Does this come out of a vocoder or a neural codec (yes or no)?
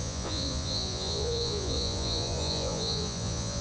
yes